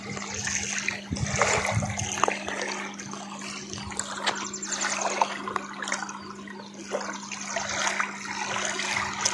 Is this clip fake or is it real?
real